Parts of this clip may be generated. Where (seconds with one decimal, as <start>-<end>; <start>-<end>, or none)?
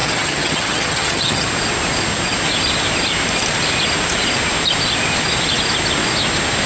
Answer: 0.0-1.5